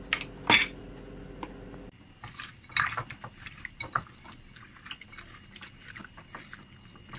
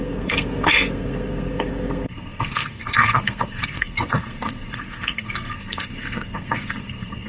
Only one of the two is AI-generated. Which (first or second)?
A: second